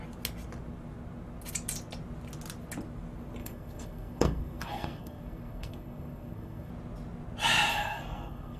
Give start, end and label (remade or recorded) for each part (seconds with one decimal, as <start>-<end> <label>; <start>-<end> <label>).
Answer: 0.0-3.4 recorded; 3.4-6.7 remade; 6.7-7.7 recorded; 7.7-8.6 remade